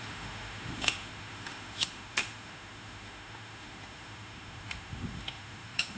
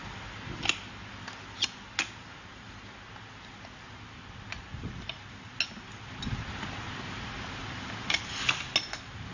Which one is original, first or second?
second